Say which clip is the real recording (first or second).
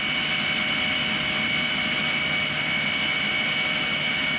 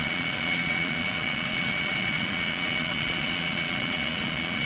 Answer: first